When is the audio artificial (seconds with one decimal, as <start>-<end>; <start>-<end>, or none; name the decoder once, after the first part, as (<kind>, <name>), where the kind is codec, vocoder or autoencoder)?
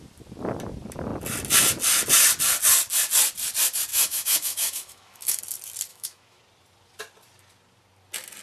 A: 3.9-5.4 (autoencoder, DAC-VAE); 5.9-6.4